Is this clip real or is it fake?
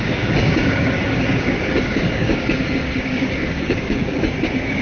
fake